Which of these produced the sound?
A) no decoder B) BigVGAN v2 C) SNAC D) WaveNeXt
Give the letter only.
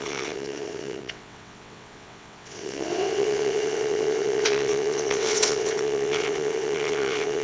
D